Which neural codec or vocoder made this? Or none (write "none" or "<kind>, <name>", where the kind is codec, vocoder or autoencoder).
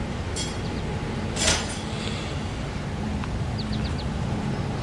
none